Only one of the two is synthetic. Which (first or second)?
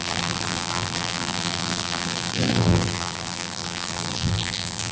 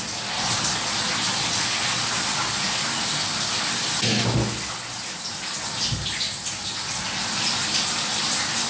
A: first